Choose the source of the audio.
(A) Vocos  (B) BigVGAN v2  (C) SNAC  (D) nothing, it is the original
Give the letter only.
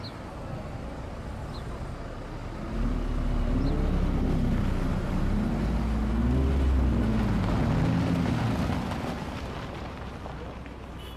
D